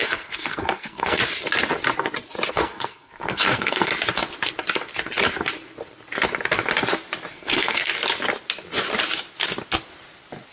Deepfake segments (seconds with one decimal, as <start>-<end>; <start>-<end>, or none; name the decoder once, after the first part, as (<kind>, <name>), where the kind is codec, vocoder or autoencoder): 0.0-1.2 (codec, SNAC); 2.5-3.9; 7.3-7.9